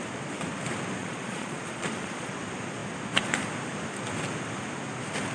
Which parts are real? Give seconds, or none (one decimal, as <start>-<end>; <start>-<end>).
0.0-1.0; 2.3-5.3